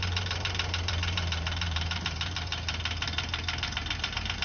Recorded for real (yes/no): no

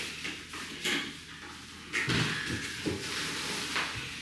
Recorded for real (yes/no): yes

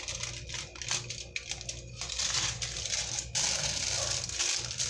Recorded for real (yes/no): yes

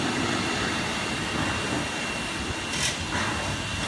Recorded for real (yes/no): no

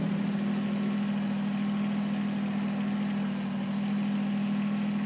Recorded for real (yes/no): yes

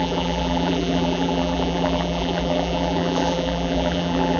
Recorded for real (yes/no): no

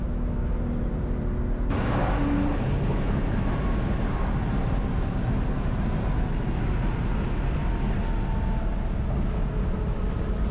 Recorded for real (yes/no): yes